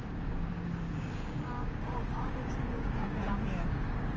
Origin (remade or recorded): remade